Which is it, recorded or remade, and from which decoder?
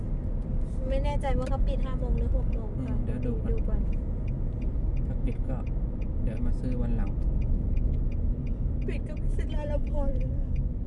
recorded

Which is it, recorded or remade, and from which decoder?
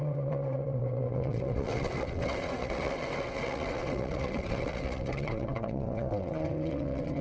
remade, vocoder, WaveNeXt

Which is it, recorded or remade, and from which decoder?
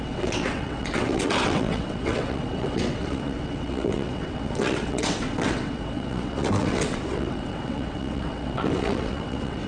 remade, vocoder, WaveNeXt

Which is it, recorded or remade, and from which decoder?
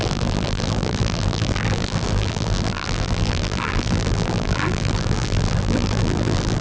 remade, vocoder, BigVGAN v2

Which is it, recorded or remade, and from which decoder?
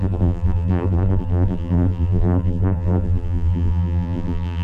remade, vocoder, BigVGAN v2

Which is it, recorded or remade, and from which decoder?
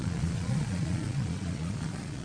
remade, vocoder, Vocos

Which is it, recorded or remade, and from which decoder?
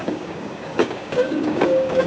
remade, codec, DAC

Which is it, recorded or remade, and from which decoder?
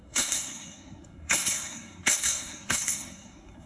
remade, codec, SNAC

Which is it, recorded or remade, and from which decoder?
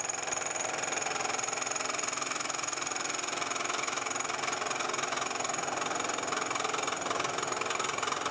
recorded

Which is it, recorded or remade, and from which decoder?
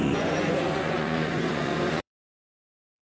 remade, vocoder, Vocos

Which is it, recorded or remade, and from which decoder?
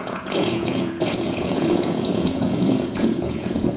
remade, vocoder, Vocos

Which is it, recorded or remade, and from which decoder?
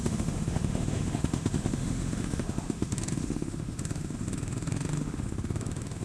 remade, autoencoder, DAC-VAE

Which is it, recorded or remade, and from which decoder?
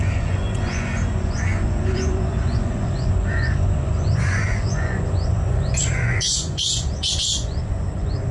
remade, vocoder, Vocos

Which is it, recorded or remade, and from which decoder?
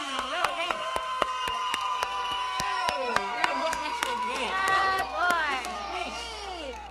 remade, codec, SNAC